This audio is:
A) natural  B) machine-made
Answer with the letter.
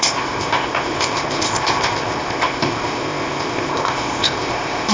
B